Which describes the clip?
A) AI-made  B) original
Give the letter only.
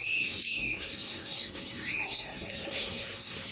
A